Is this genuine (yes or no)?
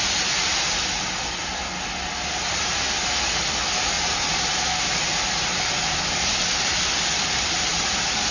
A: yes